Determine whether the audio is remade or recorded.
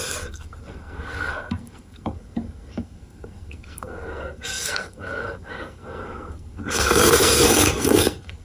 remade